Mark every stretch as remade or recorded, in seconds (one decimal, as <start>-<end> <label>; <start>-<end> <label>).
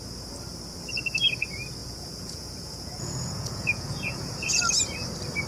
0.0-1.8 recorded; 1.8-4.6 remade; 4.6-5.5 recorded